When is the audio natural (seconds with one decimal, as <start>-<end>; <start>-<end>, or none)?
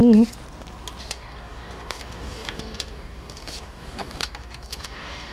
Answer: 0.0-1.0